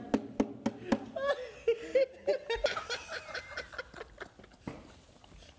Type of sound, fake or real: real